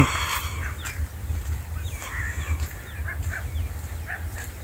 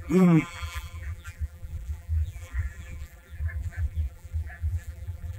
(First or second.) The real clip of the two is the first